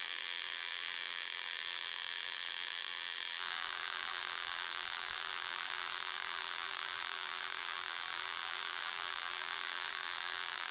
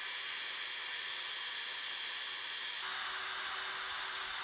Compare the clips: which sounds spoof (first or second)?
first